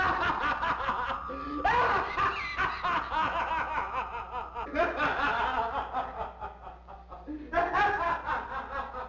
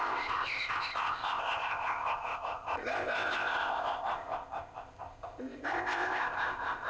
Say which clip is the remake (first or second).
second